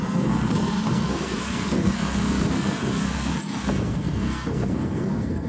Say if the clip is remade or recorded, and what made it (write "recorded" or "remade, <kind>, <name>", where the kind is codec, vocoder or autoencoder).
remade, codec, SNAC